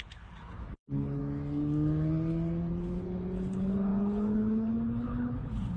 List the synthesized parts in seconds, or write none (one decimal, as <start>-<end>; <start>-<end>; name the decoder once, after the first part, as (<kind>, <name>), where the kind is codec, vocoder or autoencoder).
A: 0.0-1.2 (codec, HILCodec); 2.7-5.8